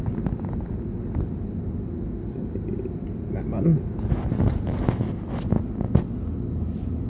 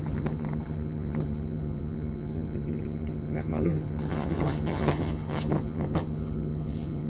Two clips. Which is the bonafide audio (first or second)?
first